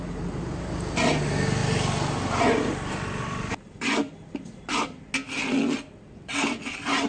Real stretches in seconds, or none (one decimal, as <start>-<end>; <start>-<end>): 0.0-7.1